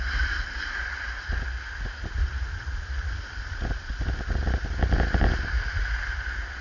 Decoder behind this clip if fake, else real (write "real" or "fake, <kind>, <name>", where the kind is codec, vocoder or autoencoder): real